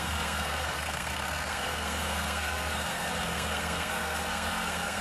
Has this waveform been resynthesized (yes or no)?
yes